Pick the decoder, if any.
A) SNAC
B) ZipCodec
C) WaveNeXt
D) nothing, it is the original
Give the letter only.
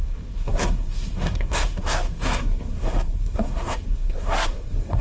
A